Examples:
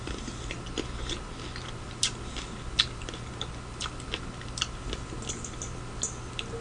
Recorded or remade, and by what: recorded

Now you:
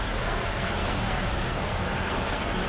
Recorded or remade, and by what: remade, codec, SNAC